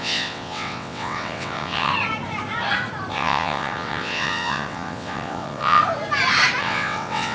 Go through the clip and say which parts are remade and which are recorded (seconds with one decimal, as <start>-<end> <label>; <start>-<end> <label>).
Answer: 0.0-1.9 remade; 1.9-3.1 recorded; 3.1-5.8 remade; 5.8-6.6 recorded; 6.6-7.3 remade